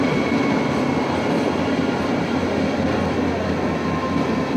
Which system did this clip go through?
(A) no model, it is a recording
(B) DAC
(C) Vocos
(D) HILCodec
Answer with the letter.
A